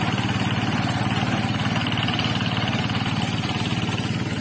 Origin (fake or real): real